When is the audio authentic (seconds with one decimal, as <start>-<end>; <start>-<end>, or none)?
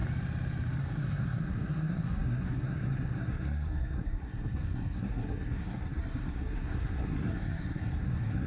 0.0-0.8